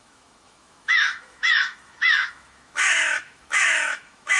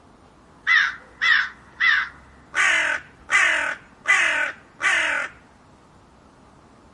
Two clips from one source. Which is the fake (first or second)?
first